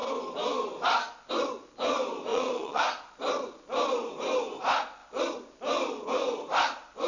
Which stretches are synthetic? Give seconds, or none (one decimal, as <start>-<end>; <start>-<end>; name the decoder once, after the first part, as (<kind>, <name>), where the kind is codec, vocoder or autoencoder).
2.3-2.8 (vocoder, Vocos)